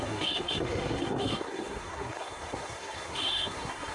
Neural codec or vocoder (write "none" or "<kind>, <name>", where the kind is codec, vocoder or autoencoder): codec, SNAC